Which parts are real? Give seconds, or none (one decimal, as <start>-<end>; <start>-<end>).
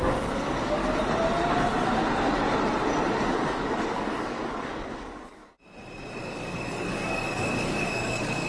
0.8-3.3; 5.4-6.2